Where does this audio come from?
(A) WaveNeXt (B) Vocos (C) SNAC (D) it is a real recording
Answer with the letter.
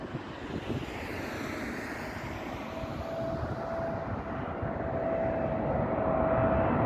D